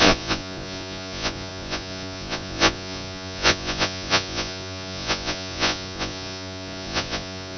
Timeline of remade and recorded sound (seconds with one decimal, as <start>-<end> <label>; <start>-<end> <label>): 0.0-7.6 remade